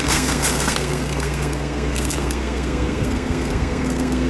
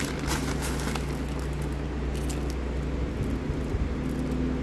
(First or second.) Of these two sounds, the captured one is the second